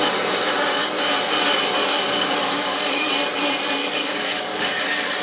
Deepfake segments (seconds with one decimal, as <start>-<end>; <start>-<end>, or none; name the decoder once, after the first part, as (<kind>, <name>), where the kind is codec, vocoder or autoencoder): 1.8-3.1 (codec, DAC); 3.8-4.8